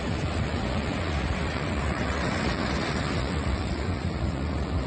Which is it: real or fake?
fake